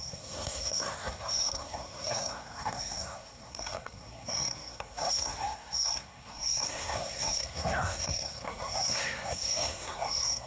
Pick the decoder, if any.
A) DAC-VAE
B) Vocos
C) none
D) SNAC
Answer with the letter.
D